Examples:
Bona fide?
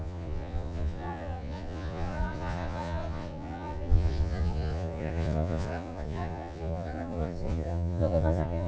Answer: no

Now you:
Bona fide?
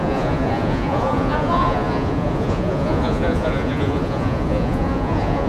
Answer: no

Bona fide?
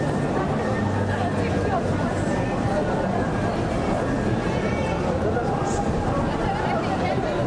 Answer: yes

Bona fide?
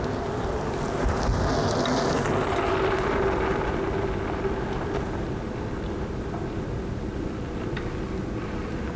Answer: yes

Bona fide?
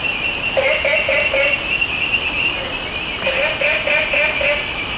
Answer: yes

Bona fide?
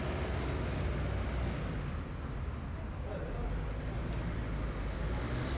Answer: yes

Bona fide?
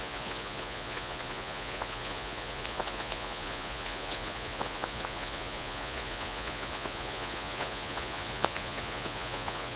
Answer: no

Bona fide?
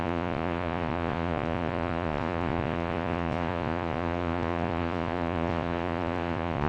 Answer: no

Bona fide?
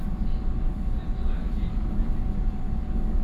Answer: yes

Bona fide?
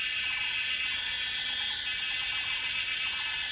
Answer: yes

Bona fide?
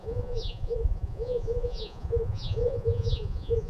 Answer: no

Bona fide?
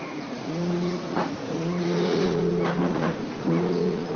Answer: no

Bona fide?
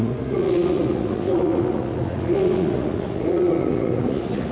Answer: no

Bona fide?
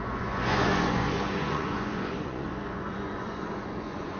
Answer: no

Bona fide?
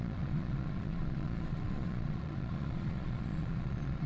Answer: no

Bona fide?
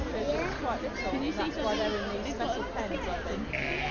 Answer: yes